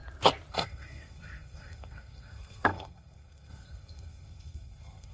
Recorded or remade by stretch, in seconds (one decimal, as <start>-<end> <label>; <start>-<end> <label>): 0.0-0.5 recorded; 0.5-5.1 remade